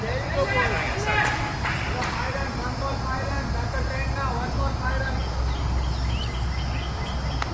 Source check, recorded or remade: recorded